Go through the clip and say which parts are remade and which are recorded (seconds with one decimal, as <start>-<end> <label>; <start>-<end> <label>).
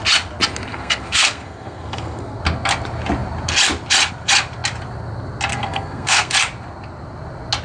0.0-0.7 recorded; 0.7-2.4 remade; 2.4-5.5 recorded; 5.5-6.3 remade; 6.3-7.6 recorded